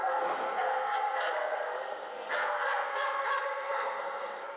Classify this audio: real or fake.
fake